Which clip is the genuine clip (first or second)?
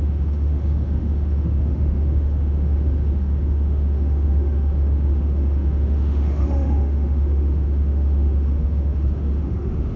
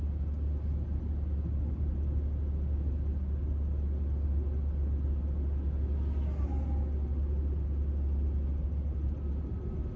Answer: second